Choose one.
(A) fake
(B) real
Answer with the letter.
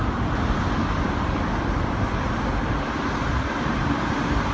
B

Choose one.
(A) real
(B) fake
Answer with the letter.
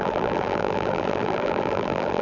B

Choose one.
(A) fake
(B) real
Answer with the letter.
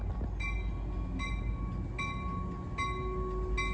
B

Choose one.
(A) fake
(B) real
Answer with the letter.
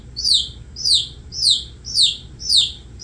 B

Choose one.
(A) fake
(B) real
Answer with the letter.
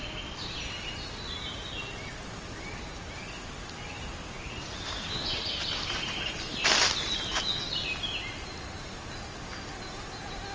B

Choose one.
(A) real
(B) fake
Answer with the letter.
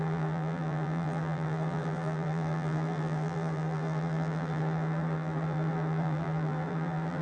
B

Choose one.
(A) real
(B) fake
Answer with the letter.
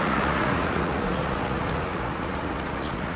B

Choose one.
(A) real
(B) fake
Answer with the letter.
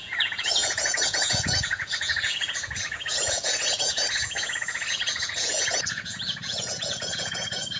B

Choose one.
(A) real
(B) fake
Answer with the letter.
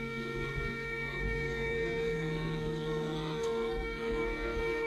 B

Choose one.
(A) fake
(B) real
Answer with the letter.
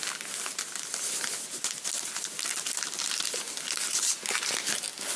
B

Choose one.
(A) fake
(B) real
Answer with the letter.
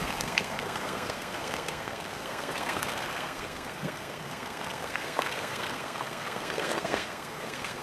A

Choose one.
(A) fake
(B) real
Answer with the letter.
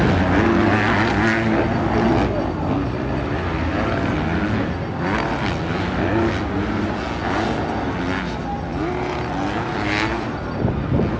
B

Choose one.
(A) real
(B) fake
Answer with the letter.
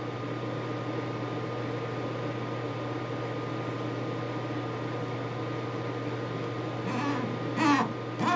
A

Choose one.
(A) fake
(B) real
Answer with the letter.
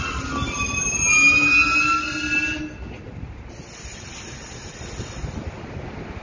B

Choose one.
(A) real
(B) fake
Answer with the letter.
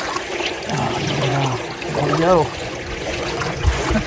B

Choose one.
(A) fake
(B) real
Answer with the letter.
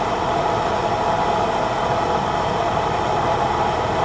B